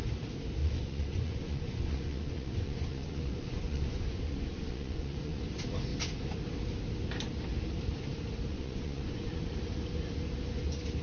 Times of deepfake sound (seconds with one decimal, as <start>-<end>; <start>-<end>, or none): 0.6-5.4; 8.5-9.4